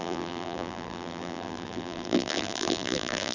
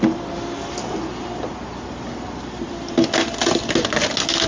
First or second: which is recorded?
second